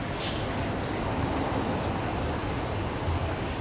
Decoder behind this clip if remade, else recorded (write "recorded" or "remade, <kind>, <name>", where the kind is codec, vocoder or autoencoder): recorded